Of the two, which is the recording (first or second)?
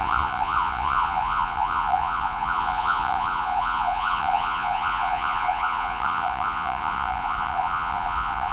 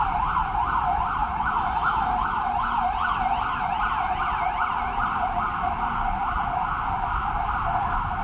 second